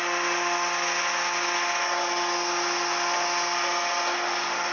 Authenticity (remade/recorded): recorded